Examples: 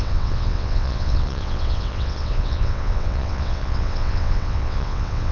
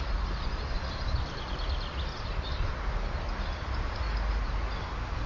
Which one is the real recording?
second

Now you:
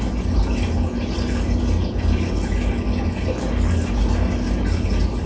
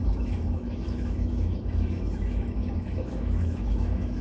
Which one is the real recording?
first